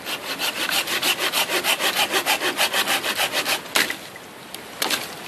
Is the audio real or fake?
real